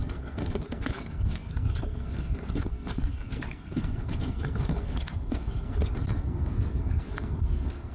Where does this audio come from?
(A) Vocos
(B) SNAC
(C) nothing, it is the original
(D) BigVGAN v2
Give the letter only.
B